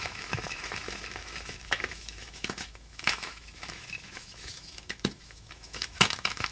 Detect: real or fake fake